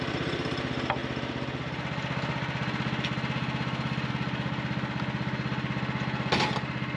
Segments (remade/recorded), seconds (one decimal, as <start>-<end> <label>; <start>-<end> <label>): 0.0-7.0 recorded